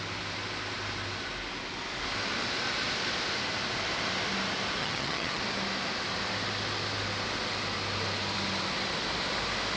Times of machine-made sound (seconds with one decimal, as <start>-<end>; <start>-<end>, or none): 4.8-5.4